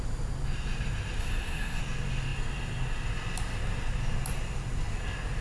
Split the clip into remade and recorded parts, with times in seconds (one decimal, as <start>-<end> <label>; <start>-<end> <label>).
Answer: 0.0-1.2 recorded; 1.2-1.8 remade; 1.8-5.4 recorded

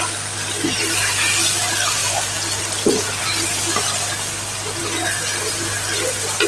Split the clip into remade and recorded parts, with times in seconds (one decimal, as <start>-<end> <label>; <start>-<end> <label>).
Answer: 0.0-6.5 recorded

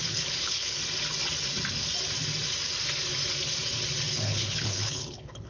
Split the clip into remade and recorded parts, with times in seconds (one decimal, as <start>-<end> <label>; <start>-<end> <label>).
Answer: 0.0-0.8 remade; 0.8-4.1 recorded; 4.1-5.5 remade

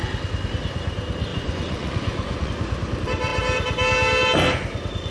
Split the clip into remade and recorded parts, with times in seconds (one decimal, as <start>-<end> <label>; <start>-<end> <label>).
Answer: 0.0-1.3 recorded; 1.3-2.5 remade; 2.5-5.1 recorded

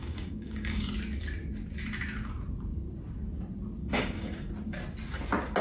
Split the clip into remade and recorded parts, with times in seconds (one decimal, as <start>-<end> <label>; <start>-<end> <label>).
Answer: 0.0-0.9 remade; 0.9-3.8 recorded; 3.8-4.5 remade; 4.5-5.6 recorded

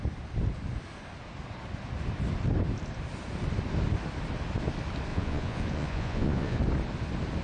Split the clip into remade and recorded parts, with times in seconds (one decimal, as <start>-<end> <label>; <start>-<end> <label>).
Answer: 0.0-5.1 recorded; 5.1-6.6 remade; 6.6-7.4 recorded

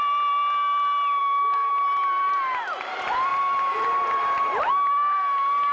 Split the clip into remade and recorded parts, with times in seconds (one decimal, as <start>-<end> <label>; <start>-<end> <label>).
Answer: 0.0-1.2 recorded; 1.2-1.7 remade; 1.7-5.7 recorded

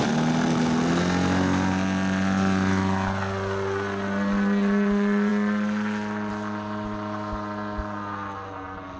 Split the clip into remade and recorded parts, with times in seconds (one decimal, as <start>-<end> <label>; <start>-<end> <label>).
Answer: 0.0-9.0 recorded